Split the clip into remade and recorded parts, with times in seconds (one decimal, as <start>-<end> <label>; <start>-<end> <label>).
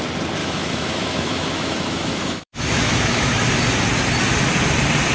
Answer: 0.0-0.4 recorded; 0.4-3.5 remade; 3.5-5.1 recorded